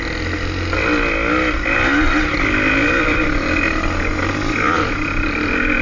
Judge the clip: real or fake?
real